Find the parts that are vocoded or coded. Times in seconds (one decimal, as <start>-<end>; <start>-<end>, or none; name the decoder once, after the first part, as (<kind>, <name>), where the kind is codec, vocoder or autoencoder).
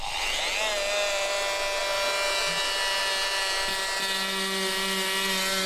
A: none